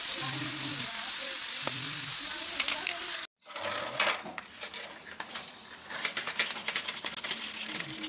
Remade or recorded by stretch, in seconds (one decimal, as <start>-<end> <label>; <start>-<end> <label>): 0.0-8.1 recorded